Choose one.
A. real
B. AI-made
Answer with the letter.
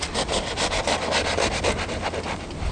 A